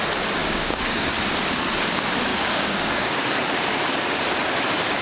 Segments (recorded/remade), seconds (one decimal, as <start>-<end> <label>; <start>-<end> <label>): 0.0-0.4 recorded; 0.4-1.1 remade; 1.1-2.3 recorded; 2.3-3.4 remade; 3.4-5.0 recorded